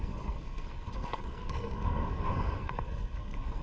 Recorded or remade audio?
remade